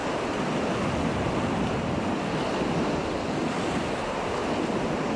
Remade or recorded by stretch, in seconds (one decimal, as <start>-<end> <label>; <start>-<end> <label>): 0.0-5.2 recorded